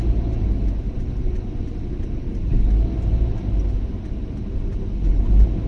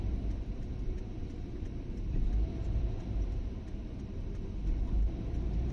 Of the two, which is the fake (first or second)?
second